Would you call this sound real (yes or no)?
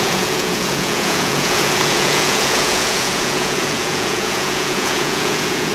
no